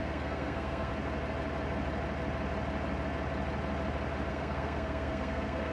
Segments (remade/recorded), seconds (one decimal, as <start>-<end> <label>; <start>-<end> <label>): 0.0-0.9 remade; 0.9-4.3 recorded; 4.3-5.7 remade